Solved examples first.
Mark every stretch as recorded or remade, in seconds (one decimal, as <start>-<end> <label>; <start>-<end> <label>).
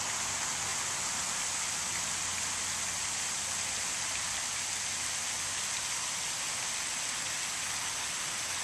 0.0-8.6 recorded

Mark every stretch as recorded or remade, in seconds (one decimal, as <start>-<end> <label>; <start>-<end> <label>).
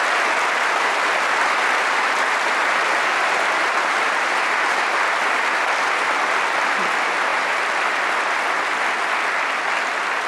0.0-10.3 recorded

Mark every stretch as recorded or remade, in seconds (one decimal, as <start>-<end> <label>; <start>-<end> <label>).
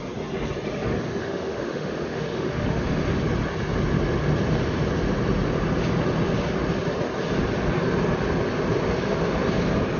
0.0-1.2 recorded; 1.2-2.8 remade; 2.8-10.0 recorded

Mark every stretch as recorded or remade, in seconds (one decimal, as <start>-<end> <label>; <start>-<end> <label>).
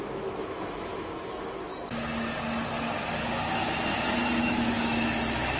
0.0-1.7 remade; 1.7-4.4 recorded; 4.4-5.6 remade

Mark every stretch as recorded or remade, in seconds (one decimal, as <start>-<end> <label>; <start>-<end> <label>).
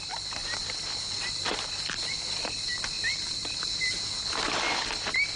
0.0-5.4 recorded